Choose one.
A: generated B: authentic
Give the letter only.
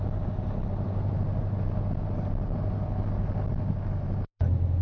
B